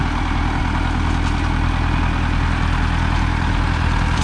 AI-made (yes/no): no